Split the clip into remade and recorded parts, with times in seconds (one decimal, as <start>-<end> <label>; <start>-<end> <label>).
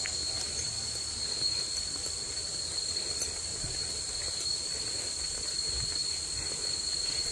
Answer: 0.0-7.3 recorded